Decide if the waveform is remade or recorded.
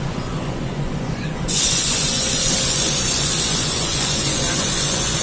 remade